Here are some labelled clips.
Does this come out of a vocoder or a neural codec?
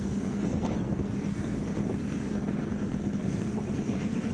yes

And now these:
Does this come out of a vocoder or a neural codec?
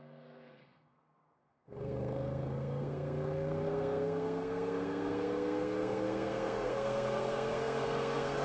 yes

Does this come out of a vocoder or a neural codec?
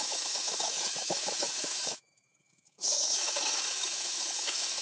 yes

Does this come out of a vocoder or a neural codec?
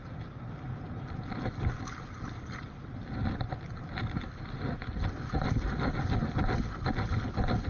no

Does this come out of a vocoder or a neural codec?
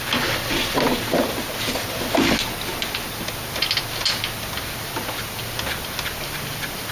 no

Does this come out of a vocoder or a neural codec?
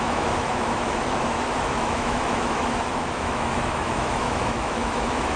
yes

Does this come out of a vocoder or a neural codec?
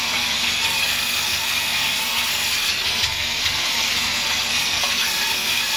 yes